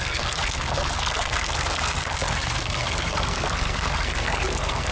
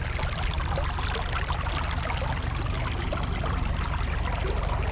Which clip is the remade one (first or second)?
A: first